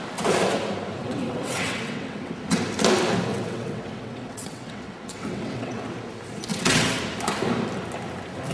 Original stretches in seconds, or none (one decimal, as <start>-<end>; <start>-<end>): 0.0-1.0; 2.4-3.3; 5.8-6.5; 7.0-8.5